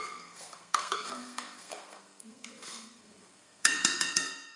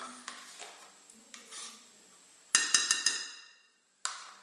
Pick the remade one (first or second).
first